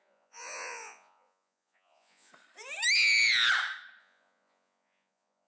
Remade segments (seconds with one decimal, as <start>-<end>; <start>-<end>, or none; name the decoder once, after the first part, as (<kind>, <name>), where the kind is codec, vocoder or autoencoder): 0.0-2.3 (vocoder, Vocos); 4.0-5.5